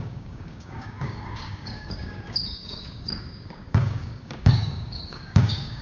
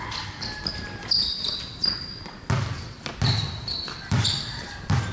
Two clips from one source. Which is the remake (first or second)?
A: first